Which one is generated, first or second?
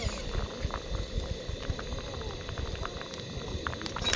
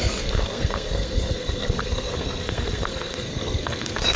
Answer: second